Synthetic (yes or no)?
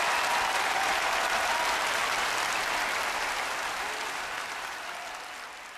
no